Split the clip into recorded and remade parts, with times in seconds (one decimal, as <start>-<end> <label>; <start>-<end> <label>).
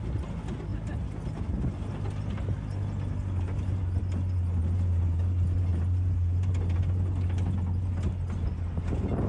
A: 0.0-9.3 recorded